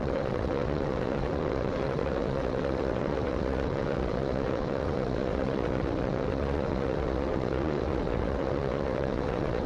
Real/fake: fake